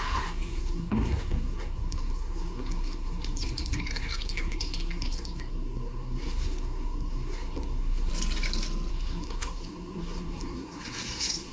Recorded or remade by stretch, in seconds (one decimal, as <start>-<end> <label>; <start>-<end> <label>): 0.0-8.1 remade; 8.1-8.9 recorded; 8.9-11.5 remade